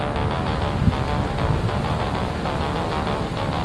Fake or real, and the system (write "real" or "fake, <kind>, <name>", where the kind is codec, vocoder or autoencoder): real